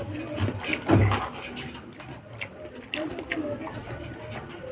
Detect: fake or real real